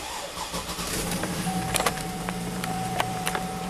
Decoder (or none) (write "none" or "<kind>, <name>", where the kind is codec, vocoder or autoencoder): vocoder, BigVGAN v2